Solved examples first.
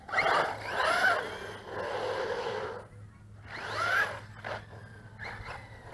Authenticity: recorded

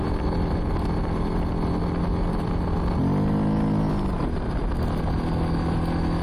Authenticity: recorded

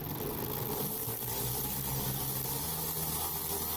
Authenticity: recorded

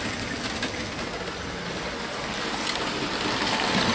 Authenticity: recorded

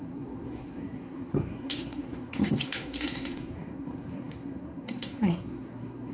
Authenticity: remade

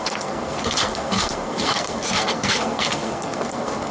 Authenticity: remade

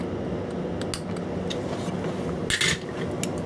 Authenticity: recorded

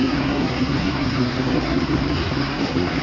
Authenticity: remade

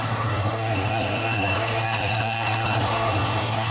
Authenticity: remade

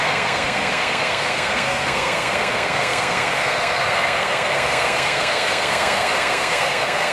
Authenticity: remade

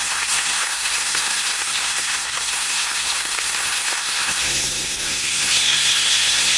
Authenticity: remade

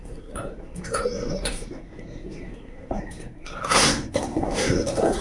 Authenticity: remade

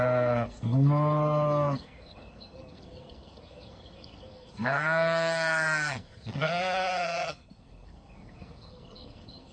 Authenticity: remade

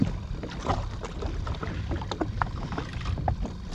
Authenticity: recorded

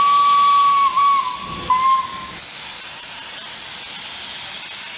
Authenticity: recorded